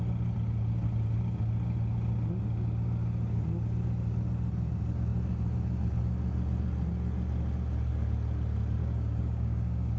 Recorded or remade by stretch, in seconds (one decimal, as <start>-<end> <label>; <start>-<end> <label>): 0.0-8.8 recorded; 8.8-10.0 remade